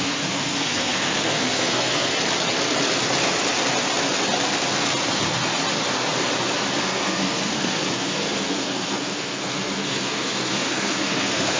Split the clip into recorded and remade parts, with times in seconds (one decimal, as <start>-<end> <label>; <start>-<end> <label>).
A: 0.0-2.1 remade; 2.1-6.8 recorded; 6.8-11.6 remade